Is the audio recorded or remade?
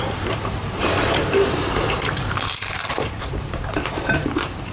remade